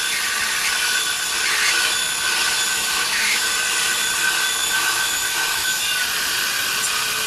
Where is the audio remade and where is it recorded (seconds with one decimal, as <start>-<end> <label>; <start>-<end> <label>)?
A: 0.0-2.7 recorded; 2.7-3.5 remade; 3.5-4.6 recorded; 4.6-5.8 remade; 5.8-7.3 recorded